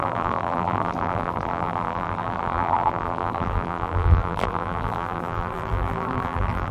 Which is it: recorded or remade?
remade